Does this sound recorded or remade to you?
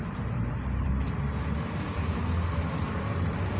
remade